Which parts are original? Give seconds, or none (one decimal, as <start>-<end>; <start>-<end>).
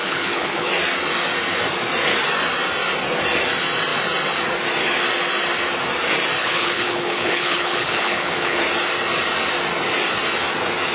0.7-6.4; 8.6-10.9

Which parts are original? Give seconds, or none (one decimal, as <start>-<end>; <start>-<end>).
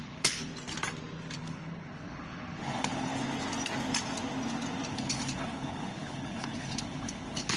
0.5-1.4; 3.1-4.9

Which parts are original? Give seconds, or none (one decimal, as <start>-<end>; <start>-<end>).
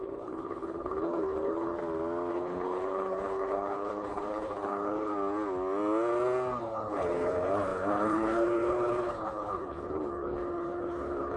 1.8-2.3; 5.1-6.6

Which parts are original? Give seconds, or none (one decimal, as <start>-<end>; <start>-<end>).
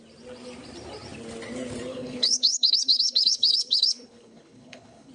0.0-1.9